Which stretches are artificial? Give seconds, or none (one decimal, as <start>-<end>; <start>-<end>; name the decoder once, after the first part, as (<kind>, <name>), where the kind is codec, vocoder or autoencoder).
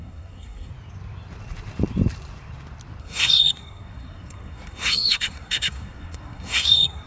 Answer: 0.0-0.7 (codec, SNAC); 3.0-7.1